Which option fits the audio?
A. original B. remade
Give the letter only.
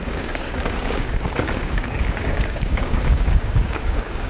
B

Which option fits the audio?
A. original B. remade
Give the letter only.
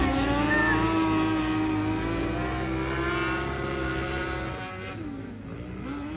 A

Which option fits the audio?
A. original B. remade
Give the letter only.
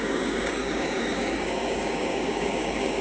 B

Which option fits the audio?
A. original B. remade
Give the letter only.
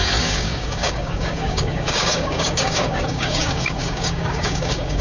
B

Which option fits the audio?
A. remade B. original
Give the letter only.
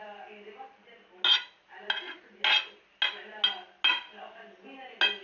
B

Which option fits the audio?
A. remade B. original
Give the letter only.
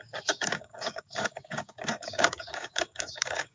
A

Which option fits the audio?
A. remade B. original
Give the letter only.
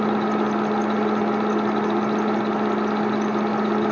B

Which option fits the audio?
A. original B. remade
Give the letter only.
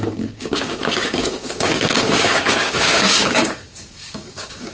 B